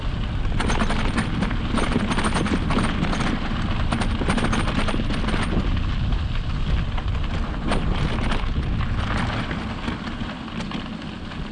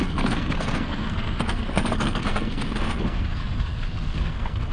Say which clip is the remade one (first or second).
second